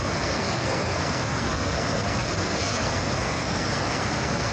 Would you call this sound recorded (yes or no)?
no